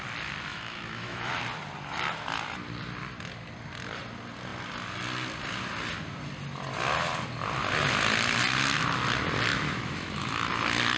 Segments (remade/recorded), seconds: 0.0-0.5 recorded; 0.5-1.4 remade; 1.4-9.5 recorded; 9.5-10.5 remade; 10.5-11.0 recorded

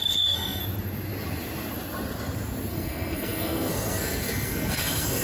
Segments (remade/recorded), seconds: 0.0-0.6 remade; 0.6-2.7 recorded; 2.7-5.2 remade

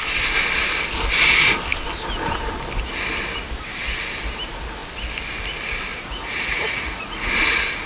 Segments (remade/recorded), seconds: 0.0-5.9 recorded; 5.9-7.3 remade; 7.3-7.9 recorded

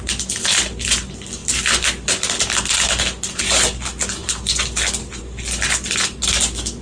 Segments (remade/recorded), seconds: 0.0-4.2 recorded; 4.2-5.2 remade; 5.2-6.8 recorded

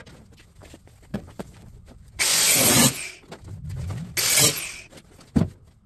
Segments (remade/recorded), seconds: 0.0-1.1 recorded; 1.1-3.1 remade; 3.1-5.9 recorded

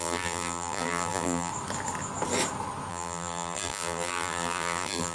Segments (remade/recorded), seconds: 0.0-1.5 remade; 1.5-2.9 recorded; 2.9-5.1 remade

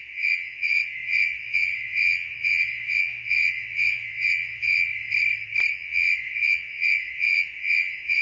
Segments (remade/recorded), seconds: 0.0-4.9 remade; 4.9-5.7 recorded; 5.7-8.2 remade